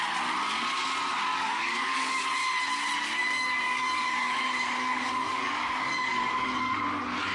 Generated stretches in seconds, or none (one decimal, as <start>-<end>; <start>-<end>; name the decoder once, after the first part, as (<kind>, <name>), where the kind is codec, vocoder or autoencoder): 1.3-2.3 (codec, DAC); 3.2-6.8